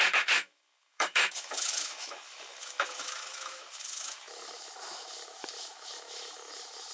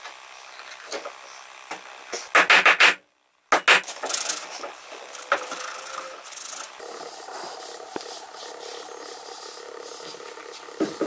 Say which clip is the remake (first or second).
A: first